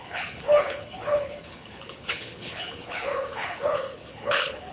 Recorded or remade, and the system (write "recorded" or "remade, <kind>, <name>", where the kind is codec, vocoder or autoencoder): remade, codec, HILCodec